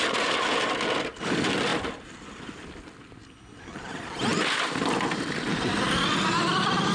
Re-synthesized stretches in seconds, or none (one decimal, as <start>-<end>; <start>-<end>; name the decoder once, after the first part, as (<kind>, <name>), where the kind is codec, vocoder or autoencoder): 1.7-2.7 (vocoder, BigVGAN v2); 4.3-4.9